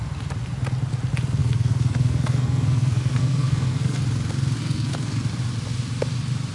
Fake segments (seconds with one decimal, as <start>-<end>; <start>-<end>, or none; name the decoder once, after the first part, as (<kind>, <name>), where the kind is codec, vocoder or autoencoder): 1.4-4.0 (codec, SNAC); 4.6-5.2